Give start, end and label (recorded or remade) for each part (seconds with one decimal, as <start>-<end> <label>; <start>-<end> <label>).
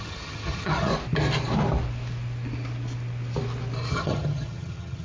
0.0-0.9 remade; 0.9-3.9 recorded; 3.9-5.0 remade